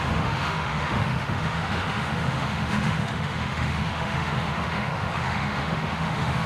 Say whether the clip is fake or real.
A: fake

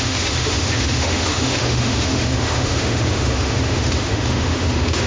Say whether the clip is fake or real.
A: fake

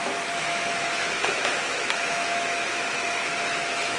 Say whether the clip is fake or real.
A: fake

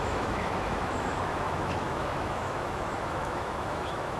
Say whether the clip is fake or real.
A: fake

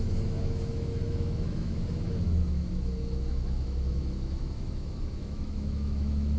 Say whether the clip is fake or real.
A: fake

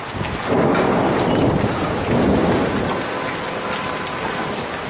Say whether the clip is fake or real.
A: real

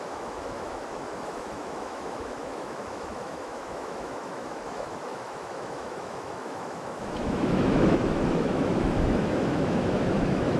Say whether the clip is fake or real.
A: fake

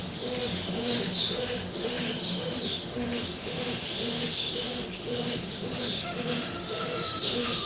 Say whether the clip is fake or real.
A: fake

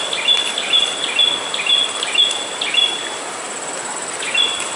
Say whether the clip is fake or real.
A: real